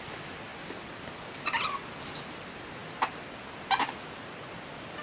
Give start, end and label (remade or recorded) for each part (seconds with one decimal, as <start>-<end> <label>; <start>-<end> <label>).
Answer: 0.0-5.0 recorded